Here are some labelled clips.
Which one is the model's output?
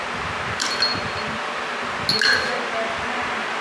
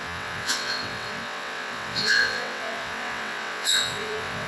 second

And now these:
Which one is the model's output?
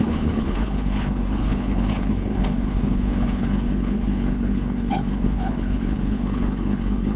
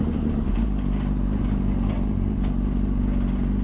first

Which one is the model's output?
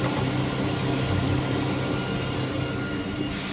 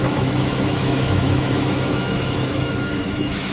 second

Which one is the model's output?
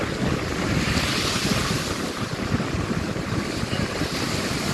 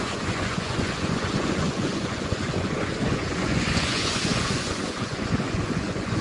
second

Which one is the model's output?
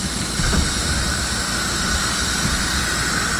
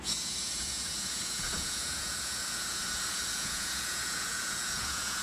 second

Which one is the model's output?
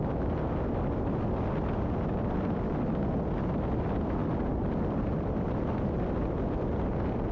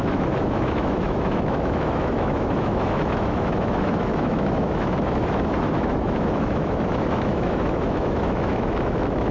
second